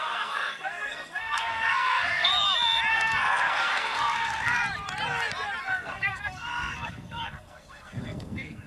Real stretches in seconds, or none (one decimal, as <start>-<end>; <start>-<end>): 2.3-2.9; 4.6-5.6